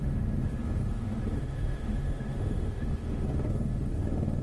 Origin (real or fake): fake